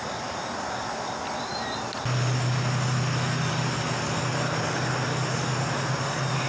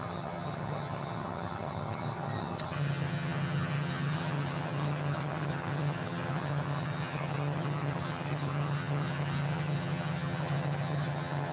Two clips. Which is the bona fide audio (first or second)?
first